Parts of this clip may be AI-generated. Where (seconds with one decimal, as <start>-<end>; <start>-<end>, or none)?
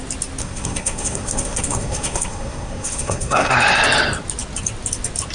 0.4-3.5